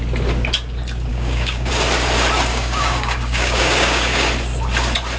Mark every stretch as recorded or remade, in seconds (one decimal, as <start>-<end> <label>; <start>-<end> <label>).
0.0-1.1 recorded; 1.1-1.7 remade; 1.7-2.5 recorded; 2.5-4.3 remade; 4.3-5.2 recorded